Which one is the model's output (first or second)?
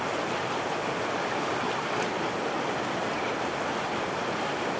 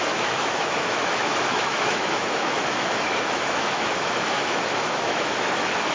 second